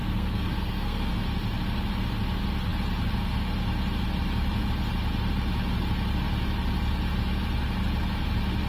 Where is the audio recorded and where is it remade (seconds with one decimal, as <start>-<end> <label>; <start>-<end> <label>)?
0.0-1.1 remade; 1.1-8.7 recorded